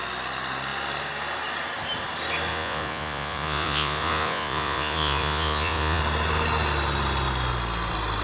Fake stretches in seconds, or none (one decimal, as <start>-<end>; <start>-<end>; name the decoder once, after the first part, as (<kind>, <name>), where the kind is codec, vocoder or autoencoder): 2.5-6.0 (vocoder, Vocos)